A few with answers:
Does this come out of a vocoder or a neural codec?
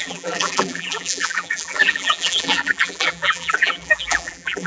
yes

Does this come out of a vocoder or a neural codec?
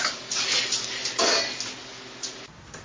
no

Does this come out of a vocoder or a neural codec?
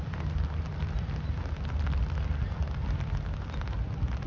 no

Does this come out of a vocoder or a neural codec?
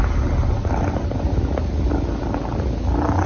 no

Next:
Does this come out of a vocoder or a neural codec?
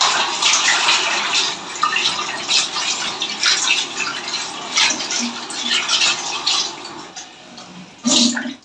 no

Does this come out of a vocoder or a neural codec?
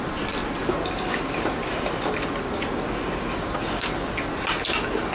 no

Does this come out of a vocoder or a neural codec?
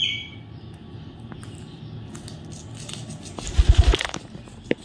no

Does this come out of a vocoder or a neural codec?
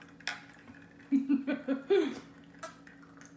no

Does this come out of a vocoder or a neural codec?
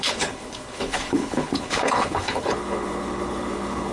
yes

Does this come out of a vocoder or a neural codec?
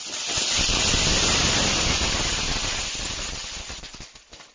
no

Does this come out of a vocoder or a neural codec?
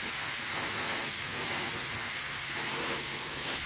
no